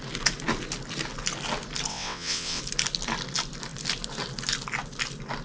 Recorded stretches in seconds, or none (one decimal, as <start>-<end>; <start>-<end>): 0.0-1.9; 2.6-5.4